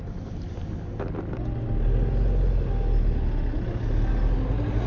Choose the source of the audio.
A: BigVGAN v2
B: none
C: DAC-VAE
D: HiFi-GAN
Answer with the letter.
B